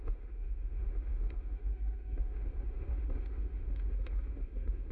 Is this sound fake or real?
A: fake